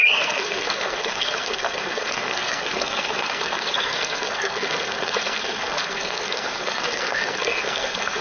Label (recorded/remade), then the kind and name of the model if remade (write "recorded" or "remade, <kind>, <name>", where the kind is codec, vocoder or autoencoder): remade, codec, SNAC